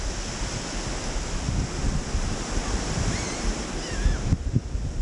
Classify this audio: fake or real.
real